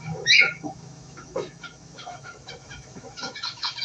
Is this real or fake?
fake